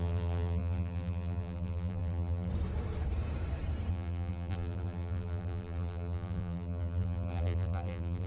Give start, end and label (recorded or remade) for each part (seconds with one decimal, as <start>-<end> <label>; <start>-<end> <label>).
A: 0.0-2.5 remade; 2.5-3.9 recorded; 3.9-8.3 remade